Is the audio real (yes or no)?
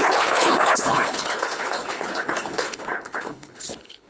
no